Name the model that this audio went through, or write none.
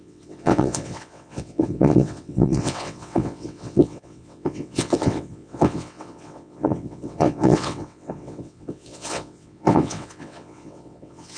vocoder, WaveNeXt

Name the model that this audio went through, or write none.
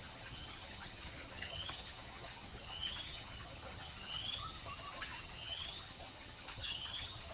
vocoder, HiFi-GAN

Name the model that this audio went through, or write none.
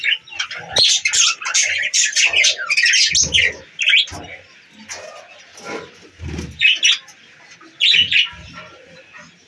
none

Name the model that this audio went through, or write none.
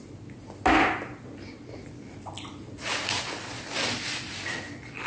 none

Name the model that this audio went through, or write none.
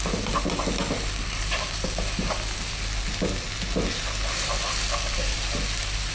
none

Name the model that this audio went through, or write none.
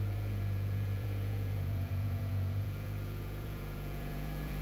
vocoder, Vocos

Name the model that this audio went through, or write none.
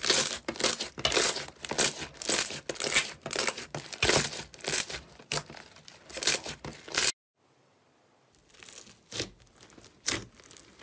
none